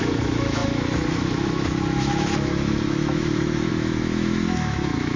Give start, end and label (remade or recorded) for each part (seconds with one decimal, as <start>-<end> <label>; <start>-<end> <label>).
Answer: 0.0-5.2 remade